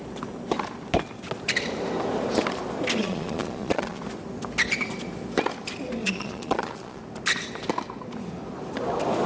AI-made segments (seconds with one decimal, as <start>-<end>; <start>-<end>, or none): 3.0-4.0; 6.0-7.0